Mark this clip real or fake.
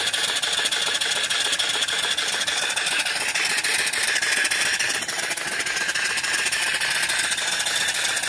real